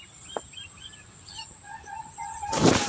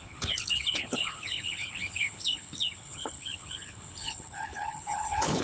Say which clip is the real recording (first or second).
first